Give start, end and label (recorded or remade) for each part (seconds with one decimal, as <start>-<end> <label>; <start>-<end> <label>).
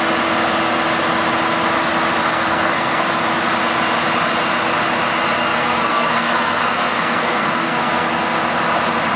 0.0-2.2 recorded; 2.2-3.1 remade; 3.1-5.5 recorded; 5.5-8.4 remade; 8.4-9.2 recorded